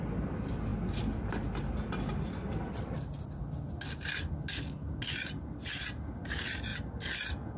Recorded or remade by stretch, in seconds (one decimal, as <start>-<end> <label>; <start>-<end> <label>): 0.0-7.6 recorded